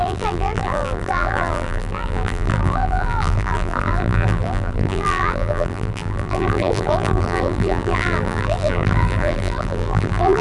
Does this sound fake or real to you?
fake